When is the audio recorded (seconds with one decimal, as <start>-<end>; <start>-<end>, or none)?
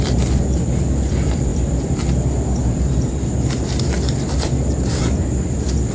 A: 0.0-5.9